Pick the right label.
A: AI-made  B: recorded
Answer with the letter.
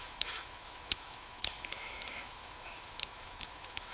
A